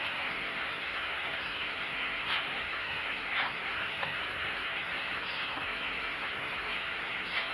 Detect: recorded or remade remade